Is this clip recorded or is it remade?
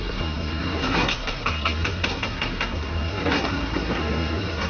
remade